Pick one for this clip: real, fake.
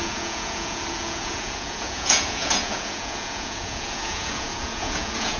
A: fake